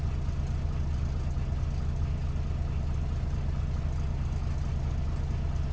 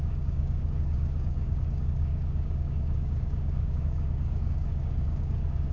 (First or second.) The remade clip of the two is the second